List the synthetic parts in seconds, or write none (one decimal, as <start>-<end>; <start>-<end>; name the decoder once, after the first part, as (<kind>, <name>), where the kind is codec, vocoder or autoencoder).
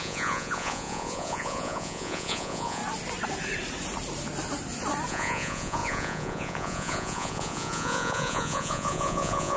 0.0-2.8 (vocoder, Vocos); 5.1-9.6